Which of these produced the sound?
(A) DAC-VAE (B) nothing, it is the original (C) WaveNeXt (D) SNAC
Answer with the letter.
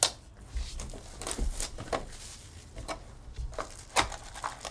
B